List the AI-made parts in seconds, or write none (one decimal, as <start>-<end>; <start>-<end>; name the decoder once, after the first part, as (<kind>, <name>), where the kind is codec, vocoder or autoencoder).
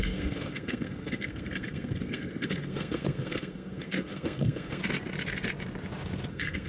0.0-4.8 (codec, SNAC); 6.3-6.7